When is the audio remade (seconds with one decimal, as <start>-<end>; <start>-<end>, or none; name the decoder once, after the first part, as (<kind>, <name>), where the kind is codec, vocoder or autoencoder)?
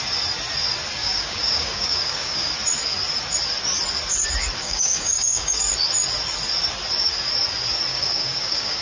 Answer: 1.0-2.5 (codec, DAC); 4.6-5.7; 7.9-8.8